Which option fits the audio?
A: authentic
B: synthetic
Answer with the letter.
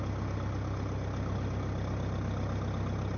A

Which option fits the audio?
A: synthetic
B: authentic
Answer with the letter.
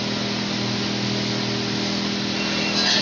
B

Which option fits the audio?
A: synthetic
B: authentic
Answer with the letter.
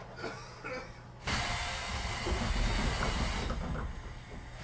B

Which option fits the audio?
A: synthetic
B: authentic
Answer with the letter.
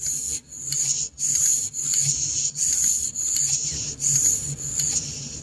B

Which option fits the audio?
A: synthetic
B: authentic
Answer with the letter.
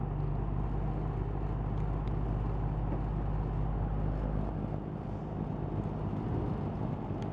B